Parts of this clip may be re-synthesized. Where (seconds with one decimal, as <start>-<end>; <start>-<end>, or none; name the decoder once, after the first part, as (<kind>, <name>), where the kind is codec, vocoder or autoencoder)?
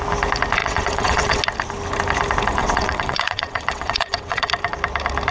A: 0.6-1.4 (vocoder, WaveNeXt); 2.6-4.5